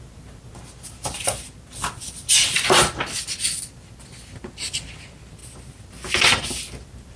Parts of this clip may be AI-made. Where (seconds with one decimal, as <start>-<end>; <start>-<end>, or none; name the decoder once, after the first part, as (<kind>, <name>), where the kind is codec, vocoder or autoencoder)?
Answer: none